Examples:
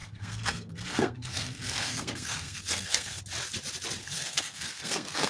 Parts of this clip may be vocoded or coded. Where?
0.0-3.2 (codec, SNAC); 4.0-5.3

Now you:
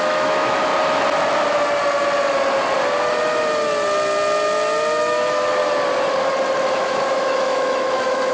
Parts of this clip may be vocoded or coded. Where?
0.0-0.7 (autoencoder, DAC-VAE); 5.0-5.6; 6.7-8.3